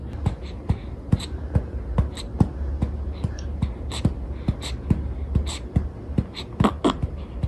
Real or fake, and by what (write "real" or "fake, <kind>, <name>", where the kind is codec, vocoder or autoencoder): real